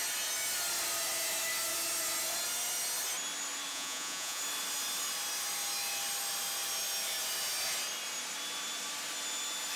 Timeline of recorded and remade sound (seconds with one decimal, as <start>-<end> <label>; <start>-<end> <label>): 0.0-3.7 recorded; 3.7-4.4 remade; 4.4-9.8 recorded